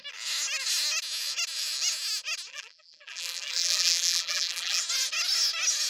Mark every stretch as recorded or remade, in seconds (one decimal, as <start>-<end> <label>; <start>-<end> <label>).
0.0-2.5 recorded; 2.5-4.8 remade; 4.8-5.9 recorded

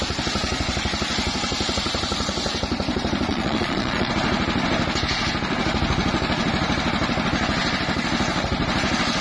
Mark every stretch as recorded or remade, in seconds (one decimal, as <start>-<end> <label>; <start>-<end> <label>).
0.0-3.3 recorded; 3.3-4.1 remade; 4.1-9.2 recorded